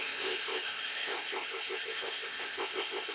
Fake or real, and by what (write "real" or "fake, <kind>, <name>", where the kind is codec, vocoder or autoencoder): fake, codec, ZipCodec